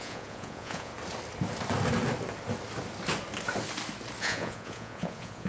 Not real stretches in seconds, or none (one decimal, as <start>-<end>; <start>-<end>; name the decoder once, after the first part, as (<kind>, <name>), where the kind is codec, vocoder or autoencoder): 0.0-0.9 (vocoder, Vocos); 4.2-5.5